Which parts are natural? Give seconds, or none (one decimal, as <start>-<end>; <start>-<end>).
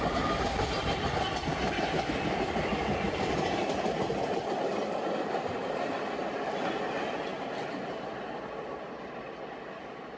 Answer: 0.0-10.2